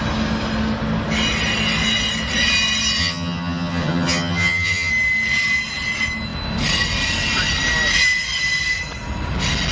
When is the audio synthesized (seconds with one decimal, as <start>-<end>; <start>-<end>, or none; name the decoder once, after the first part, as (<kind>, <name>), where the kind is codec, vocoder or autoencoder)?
3.0-4.9 (vocoder, HiFi-GAN)